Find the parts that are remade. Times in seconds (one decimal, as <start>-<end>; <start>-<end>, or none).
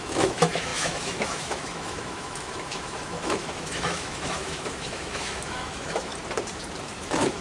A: 0.0-6.1; 6.8-7.4